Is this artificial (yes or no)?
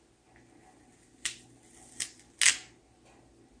no